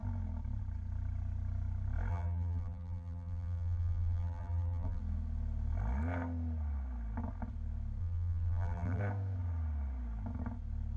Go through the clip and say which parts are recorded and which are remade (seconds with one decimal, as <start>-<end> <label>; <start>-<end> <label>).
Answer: 0.0-2.1 recorded; 2.1-5.0 remade; 5.0-8.0 recorded; 8.0-9.0 remade; 9.0-11.0 recorded